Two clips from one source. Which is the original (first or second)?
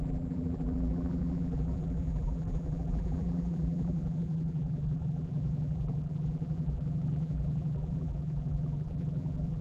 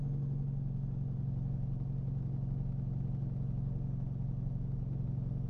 second